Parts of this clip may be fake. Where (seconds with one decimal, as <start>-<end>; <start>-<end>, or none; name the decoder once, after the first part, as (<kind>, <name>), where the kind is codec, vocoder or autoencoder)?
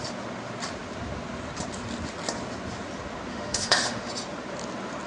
3.3-4.1 (autoencoder, DAC-VAE)